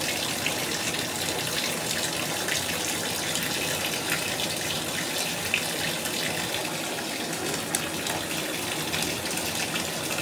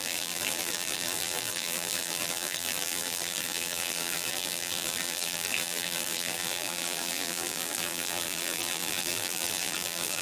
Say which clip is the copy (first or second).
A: second